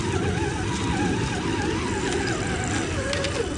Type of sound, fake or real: real